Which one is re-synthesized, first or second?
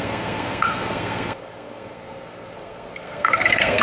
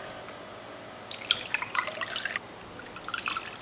first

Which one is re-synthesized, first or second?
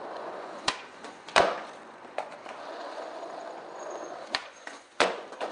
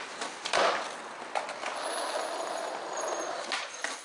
first